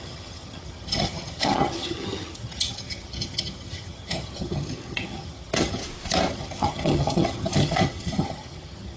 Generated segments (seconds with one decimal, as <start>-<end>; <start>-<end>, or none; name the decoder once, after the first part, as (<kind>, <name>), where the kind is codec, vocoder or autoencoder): 0.0-5.8 (vocoder, HiFi-GAN); 6.3-9.0